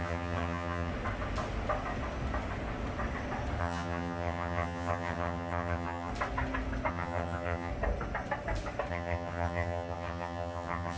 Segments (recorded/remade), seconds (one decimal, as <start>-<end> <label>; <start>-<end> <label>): 0.0-0.9 remade; 0.9-3.6 recorded; 3.6-6.1 remade; 6.1-6.9 recorded; 6.9-7.7 remade; 7.7-8.9 recorded; 8.9-11.0 remade